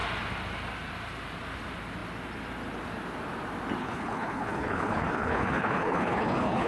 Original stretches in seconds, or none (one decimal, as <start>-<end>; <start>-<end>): 0.0-3.8